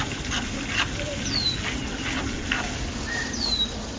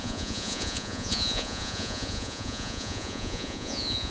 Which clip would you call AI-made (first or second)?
second